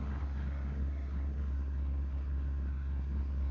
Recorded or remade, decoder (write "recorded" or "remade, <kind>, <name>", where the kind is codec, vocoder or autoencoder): remade, codec, SNAC